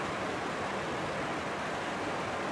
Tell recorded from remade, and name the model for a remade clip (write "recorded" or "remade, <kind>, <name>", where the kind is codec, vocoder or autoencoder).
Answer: recorded